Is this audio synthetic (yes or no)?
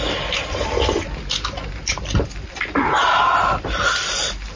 no